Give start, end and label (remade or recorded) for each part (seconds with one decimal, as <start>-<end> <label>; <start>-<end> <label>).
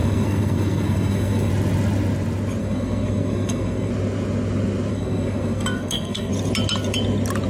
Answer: 0.0-1.5 remade; 1.5-2.6 recorded; 2.6-3.9 remade; 3.9-4.9 recorded; 4.9-6.3 remade; 6.3-7.5 recorded